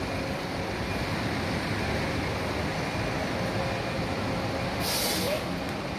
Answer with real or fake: real